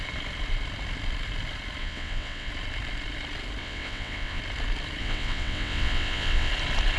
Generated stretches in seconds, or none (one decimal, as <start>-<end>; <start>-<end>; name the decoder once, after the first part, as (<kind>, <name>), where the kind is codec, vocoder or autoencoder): 1.8-2.5 (vocoder, WaveNeXt); 3.6-4.4; 5.0-6.5